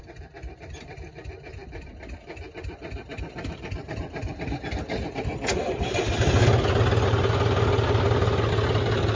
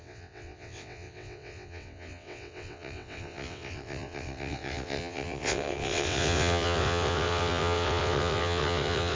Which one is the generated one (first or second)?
second